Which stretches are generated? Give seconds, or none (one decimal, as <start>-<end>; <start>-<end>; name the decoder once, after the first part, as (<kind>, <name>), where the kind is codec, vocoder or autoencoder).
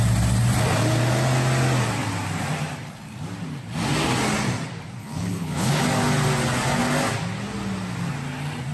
5.0-5.8 (codec, HILCodec)